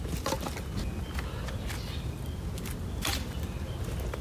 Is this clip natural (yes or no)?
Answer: yes